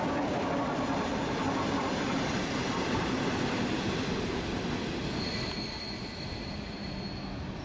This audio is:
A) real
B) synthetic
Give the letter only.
A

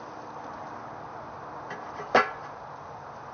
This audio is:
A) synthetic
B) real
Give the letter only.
B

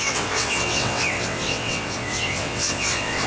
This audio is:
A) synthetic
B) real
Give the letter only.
A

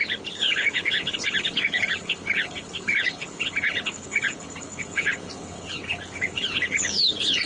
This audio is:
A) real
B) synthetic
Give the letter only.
B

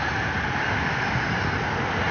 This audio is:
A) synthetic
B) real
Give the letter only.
B